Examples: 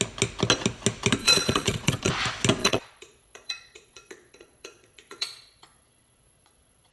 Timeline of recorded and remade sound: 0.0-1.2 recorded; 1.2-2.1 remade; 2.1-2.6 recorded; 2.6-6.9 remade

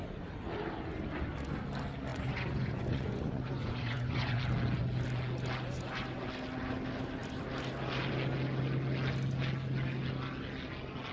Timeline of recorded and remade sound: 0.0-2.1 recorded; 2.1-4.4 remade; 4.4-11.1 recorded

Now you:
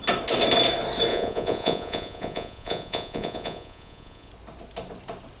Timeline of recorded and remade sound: 0.0-1.1 recorded; 1.1-4.3 remade; 4.3-5.4 recorded